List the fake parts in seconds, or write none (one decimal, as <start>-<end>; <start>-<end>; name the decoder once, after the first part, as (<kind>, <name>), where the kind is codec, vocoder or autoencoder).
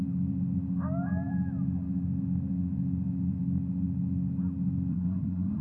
4.9-5.6 (codec, SNAC)